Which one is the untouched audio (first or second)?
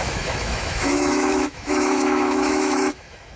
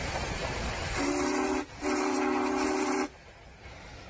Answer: second